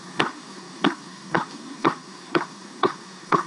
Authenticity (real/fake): fake